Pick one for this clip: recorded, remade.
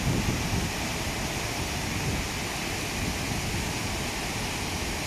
remade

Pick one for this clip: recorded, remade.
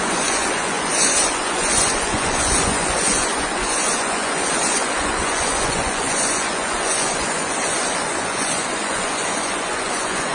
remade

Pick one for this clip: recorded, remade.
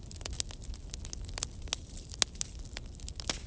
recorded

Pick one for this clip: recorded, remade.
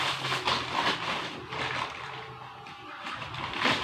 recorded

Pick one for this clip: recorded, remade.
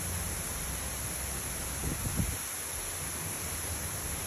recorded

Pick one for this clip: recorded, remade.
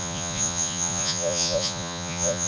remade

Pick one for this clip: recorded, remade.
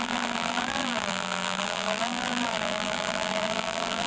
remade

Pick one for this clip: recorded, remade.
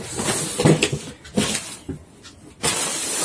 recorded